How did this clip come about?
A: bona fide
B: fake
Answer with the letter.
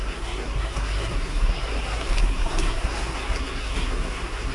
B